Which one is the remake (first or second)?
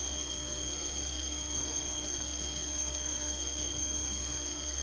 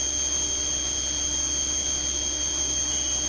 first